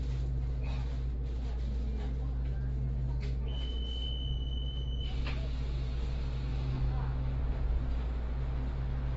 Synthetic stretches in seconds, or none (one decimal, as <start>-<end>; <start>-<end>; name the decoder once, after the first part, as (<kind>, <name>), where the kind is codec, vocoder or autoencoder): 6.5-7.4 (autoencoder, DAC-VAE)